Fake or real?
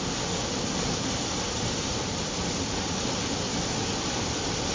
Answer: real